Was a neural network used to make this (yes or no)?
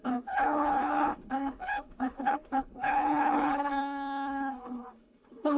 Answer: yes